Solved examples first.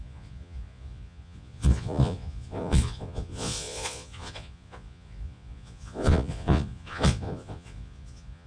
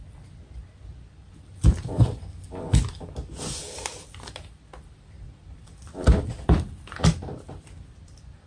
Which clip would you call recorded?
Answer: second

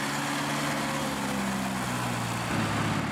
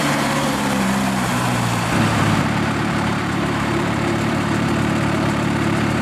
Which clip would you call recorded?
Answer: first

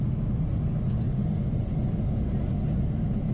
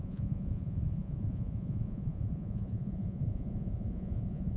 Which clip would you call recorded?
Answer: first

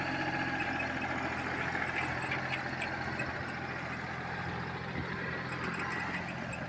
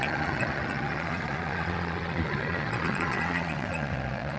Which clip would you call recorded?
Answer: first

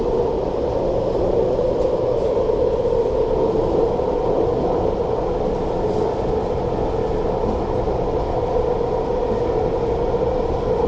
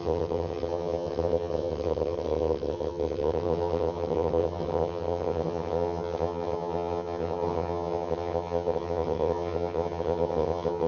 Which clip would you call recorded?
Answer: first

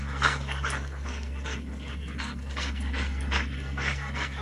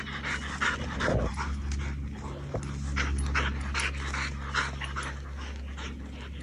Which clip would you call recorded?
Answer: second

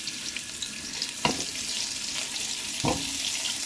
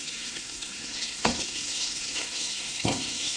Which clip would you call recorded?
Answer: first